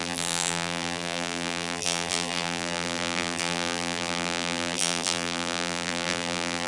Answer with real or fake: fake